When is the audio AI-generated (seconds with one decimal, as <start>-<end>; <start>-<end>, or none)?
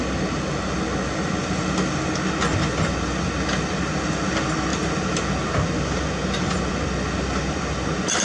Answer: none